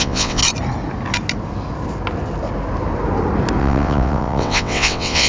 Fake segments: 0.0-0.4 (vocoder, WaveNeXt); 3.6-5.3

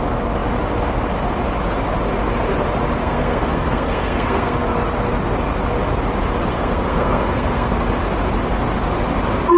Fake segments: 3.0-4.6 (codec, SNAC); 6.5-7.8

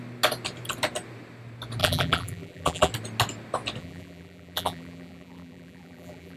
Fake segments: 1.8-2.9 (vocoder, BigVGAN v2); 3.8-6.4

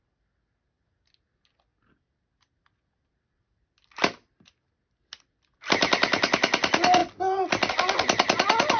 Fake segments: none

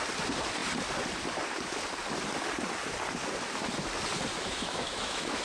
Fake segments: 4.3-5.4 (autoencoder, DAC-VAE)

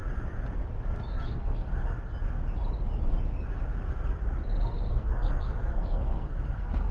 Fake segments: 1.2-1.7 (codec, SNAC); 4.9-6.9